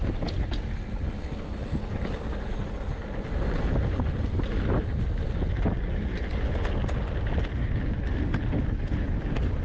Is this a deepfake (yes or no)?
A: no